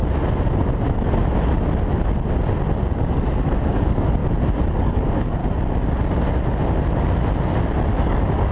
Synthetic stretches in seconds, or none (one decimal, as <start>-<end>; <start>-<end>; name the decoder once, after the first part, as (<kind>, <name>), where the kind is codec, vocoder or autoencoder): 2.9-4.2 (codec, DAC); 4.7-5.4; 8.0-8.5